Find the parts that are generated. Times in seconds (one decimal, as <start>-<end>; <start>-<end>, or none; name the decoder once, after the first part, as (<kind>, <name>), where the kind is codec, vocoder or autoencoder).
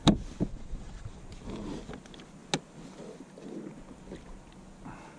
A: 0.5-1.2 (vocoder, Vocos)